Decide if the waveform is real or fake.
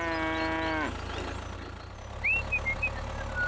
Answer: real